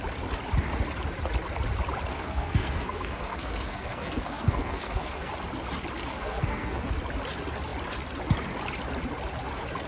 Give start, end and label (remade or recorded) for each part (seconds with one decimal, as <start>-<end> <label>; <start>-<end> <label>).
0.0-2.1 recorded; 2.1-5.3 remade; 5.3-6.1 recorded; 6.1-6.9 remade; 6.9-9.9 recorded